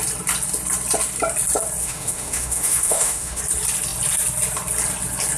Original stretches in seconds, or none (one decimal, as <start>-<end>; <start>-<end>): 0.0-1.8; 3.4-5.4